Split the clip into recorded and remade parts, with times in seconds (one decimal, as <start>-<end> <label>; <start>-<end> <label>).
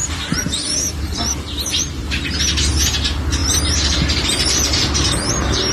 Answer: 0.0-0.4 recorded; 0.4-1.9 remade; 1.9-3.4 recorded; 3.4-5.3 remade; 5.3-5.7 recorded